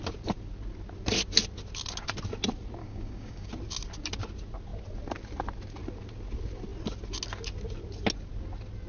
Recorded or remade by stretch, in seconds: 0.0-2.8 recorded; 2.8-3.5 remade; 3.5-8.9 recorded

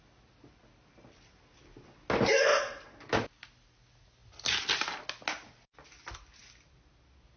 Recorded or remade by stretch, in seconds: 0.0-7.4 recorded

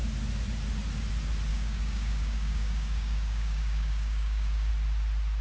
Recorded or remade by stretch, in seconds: 0.0-1.5 recorded; 1.5-4.7 remade; 4.7-5.4 recorded

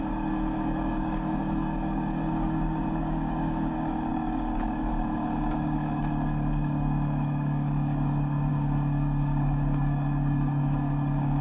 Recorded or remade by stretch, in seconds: 0.0-11.4 remade